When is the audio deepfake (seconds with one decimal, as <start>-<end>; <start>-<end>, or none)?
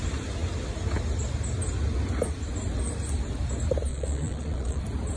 3.9-4.8